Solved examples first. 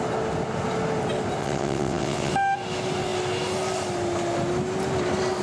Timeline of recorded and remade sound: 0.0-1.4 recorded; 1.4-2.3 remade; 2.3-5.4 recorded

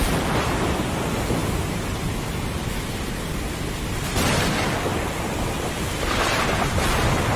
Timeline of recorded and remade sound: 0.0-4.9 recorded; 4.9-6.0 remade; 6.0-7.4 recorded

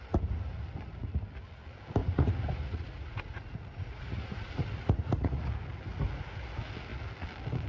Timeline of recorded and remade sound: 0.0-2.0 recorded; 2.0-5.5 remade; 5.5-7.7 recorded

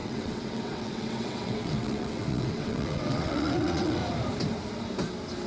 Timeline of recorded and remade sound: 0.0-4.0 remade; 4.0-5.5 recorded